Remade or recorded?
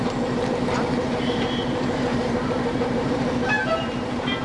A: remade